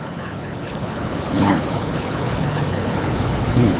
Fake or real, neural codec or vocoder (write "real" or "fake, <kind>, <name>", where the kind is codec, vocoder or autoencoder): fake, codec, HILCodec